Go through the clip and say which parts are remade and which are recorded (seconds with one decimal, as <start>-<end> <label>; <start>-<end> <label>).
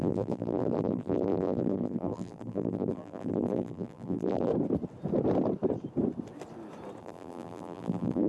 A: 0.0-4.5 remade; 4.5-7.0 recorded; 7.0-8.3 remade